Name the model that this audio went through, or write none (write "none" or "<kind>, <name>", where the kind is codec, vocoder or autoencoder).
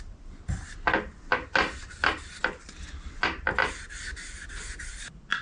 none